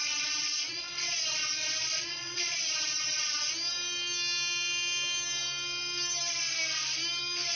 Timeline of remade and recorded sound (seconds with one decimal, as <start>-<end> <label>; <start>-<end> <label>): 0.0-3.5 remade; 3.5-7.6 recorded